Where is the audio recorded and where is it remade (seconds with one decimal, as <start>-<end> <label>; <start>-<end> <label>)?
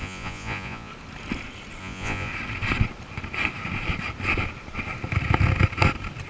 0.0-0.9 remade; 0.9-1.8 recorded; 1.8-2.3 remade; 2.3-6.3 recorded